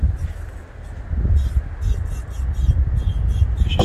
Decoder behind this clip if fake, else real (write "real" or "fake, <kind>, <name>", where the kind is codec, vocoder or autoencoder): real